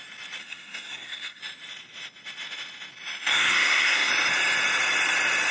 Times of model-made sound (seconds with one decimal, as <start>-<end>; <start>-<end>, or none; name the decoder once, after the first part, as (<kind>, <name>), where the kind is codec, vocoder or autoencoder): 0.4-1.4 (codec, SNAC); 3.3-4.1